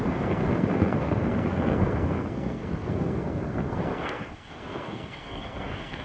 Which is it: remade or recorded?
remade